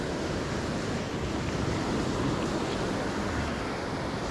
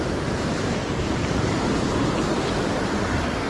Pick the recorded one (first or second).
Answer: first